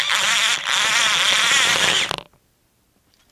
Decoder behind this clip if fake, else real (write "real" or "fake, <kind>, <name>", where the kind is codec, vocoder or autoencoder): real